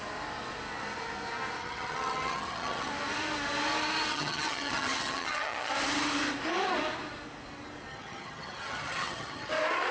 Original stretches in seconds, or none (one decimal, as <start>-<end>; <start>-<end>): 0.0-1.6; 2.9-4.1; 5.7-7.9; 9.5-9.9